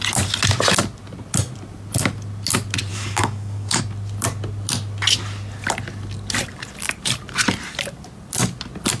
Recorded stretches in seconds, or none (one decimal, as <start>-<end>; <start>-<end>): 0.0-2.9; 3.8-9.0